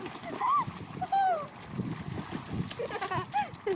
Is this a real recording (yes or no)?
yes